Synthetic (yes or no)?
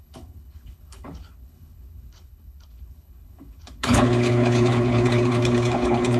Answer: yes